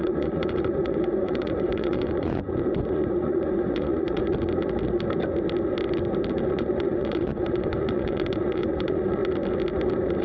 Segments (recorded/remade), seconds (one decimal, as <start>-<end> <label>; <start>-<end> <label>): 0.0-4.3 remade; 4.3-6.5 recorded; 6.5-9.2 remade; 9.2-10.2 recorded